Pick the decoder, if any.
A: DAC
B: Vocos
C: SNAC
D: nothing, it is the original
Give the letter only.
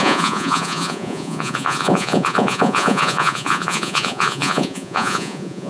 B